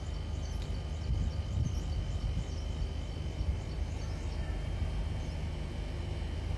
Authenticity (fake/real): real